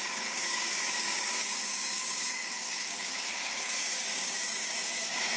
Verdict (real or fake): fake